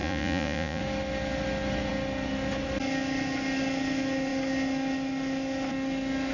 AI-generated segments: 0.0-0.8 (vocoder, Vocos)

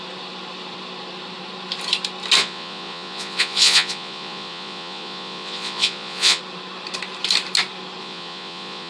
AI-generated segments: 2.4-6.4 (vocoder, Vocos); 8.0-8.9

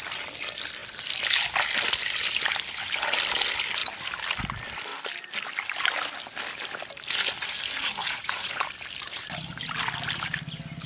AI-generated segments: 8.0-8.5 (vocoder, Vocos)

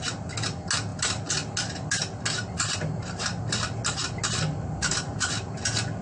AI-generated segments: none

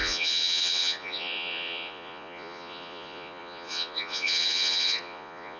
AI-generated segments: 0.0-5.6 (vocoder, Vocos)

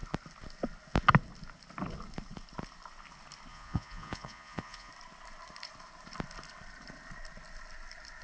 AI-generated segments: 3.5-4.9 (vocoder, Vocos)

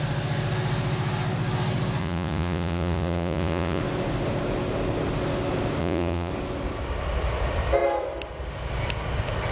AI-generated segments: 2.0-3.8 (vocoder, Vocos); 5.8-6.3

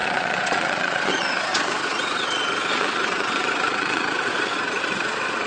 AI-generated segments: 0.0-5.5 (vocoder, Vocos)